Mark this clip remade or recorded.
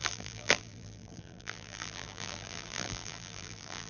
remade